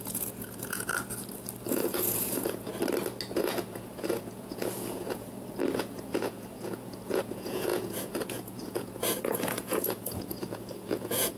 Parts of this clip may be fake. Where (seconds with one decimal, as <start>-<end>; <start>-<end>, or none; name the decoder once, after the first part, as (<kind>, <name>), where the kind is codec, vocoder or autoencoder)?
0.0-0.9 (vocoder, Vocos); 1.7-2.7; 3.4-5.3; 5.8-11.4